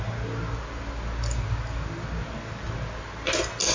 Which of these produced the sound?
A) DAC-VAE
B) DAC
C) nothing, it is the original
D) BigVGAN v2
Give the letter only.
C